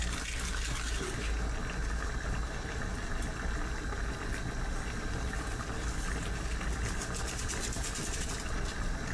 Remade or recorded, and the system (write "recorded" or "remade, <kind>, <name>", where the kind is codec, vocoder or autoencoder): recorded